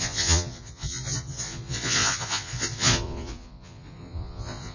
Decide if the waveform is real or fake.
fake